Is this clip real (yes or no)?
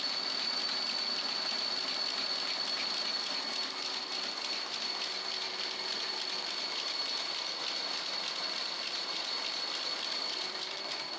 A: yes